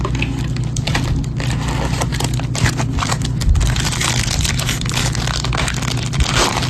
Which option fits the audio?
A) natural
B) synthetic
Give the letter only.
A